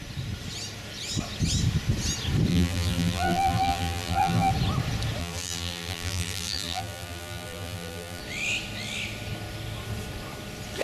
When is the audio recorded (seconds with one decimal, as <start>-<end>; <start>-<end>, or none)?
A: 0.0-2.5; 4.5-5.2; 8.2-10.8